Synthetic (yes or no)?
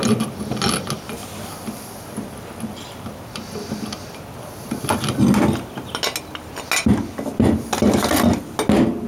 no